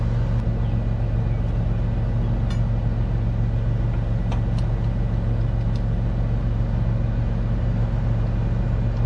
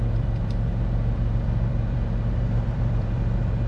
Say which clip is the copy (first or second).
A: second